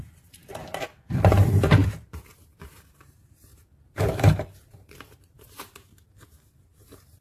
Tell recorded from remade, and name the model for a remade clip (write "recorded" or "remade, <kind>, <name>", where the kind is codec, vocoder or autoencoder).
remade, vocoder, BigVGAN v2